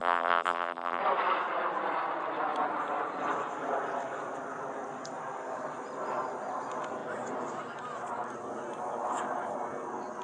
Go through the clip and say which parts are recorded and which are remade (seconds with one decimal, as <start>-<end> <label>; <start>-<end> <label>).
0.0-1.0 remade; 1.0-10.2 recorded